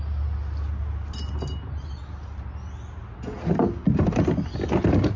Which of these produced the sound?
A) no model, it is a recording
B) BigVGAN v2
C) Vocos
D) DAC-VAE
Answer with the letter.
A